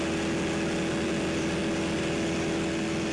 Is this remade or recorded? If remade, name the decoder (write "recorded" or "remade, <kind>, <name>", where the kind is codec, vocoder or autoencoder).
recorded